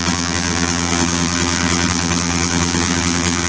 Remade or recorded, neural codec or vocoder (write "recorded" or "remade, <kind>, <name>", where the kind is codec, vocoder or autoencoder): remade, vocoder, BigVGAN v2